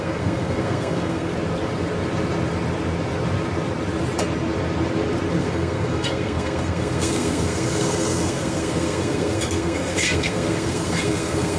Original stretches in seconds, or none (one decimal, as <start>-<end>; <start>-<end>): 1.3-5.4